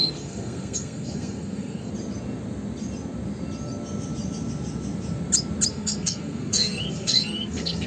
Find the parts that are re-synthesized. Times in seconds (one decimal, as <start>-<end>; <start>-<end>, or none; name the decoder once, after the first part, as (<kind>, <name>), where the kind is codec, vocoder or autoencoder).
0.0-1.9 (codec, SNAC); 5.7-7.9